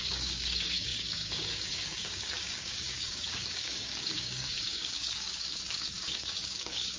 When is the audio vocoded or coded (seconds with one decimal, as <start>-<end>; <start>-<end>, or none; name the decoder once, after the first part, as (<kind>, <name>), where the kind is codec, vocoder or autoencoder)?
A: 0.0-7.0 (codec, DAC)